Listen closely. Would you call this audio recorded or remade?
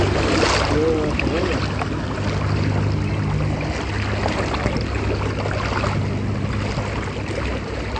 recorded